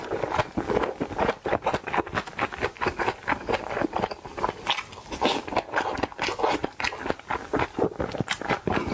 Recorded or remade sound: recorded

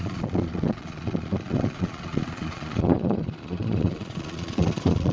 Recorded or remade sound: remade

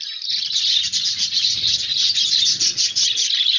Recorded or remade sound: recorded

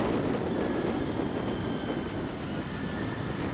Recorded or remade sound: recorded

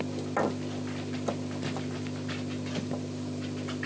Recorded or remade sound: recorded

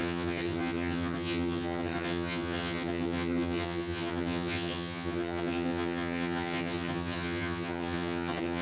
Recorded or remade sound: remade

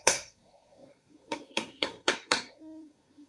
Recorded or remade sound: remade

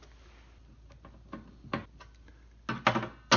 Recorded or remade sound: recorded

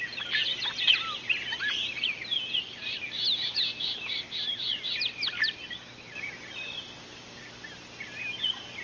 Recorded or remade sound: recorded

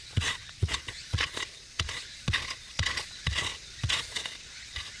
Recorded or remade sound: remade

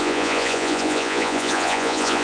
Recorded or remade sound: remade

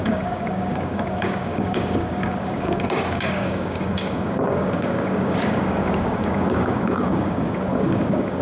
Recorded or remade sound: remade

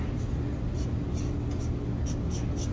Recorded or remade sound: recorded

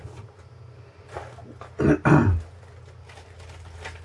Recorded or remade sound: recorded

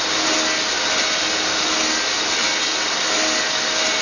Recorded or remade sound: recorded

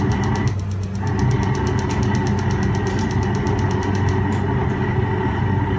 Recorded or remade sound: recorded